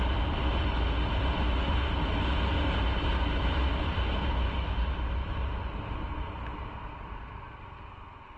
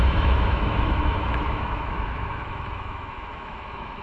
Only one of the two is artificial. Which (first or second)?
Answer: second